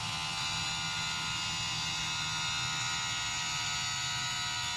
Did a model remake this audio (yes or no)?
no